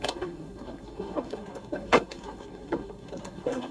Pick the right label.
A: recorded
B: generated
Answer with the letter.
B